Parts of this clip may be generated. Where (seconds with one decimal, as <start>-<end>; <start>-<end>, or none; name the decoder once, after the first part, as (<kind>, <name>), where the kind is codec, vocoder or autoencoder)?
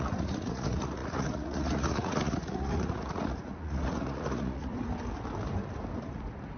0.0-4.7 (vocoder, Vocos)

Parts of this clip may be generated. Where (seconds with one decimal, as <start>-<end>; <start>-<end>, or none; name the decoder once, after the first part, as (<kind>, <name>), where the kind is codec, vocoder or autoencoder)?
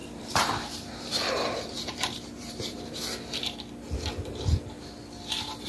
0.0-2.9 (vocoder, BigVGAN v2)